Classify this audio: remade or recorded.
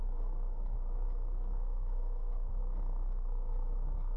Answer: remade